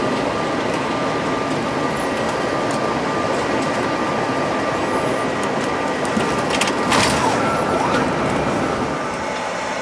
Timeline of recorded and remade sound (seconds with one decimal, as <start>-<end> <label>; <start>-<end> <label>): 0.0-9.8 recorded